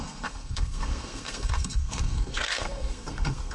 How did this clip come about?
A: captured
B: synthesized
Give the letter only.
B